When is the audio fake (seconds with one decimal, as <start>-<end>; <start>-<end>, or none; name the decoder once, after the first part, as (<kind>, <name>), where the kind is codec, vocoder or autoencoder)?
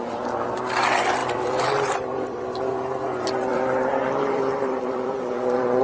1.2-2.4 (vocoder, BigVGAN v2); 3.9-5.8